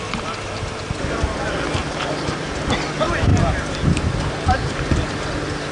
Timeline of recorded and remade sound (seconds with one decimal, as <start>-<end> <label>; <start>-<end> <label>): 0.0-1.8 recorded; 1.8-2.6 remade; 2.6-3.3 recorded; 3.3-4.7 remade; 4.7-5.7 recorded